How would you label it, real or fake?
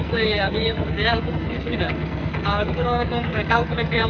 fake